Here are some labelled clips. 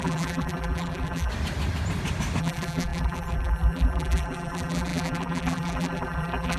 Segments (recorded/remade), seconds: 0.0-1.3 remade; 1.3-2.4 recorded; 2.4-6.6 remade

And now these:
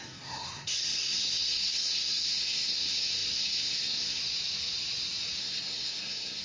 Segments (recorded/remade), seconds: 0.0-4.2 remade; 4.2-5.4 recorded; 5.4-6.4 remade

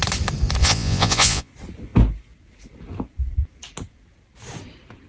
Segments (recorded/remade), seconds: 0.0-0.6 recorded; 0.6-1.5 remade; 1.5-5.1 recorded